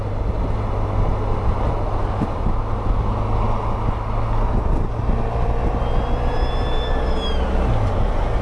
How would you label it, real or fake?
real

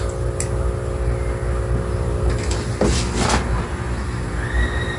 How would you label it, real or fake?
real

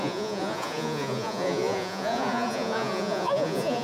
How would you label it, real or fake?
fake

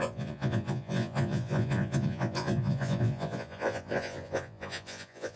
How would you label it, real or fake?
fake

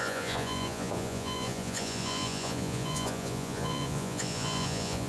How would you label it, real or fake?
fake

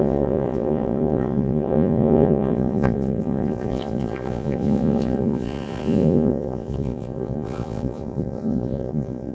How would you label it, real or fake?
fake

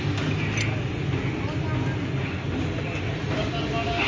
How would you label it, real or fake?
real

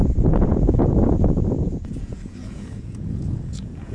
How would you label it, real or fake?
fake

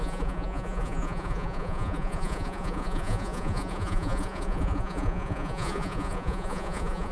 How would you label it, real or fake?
fake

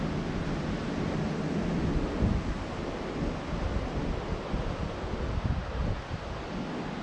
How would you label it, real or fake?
real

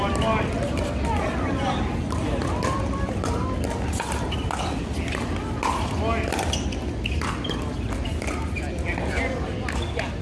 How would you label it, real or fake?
real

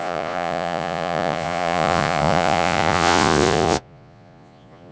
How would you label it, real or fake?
fake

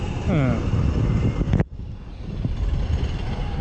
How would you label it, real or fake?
real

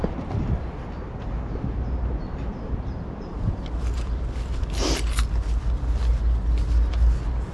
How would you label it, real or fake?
real